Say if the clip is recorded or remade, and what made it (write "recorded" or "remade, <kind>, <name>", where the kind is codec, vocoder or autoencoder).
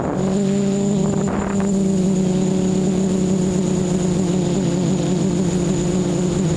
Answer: recorded